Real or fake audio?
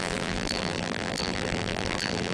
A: fake